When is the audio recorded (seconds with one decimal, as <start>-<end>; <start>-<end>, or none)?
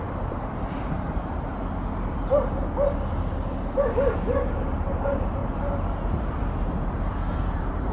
1.6-4.6; 5.4-6.2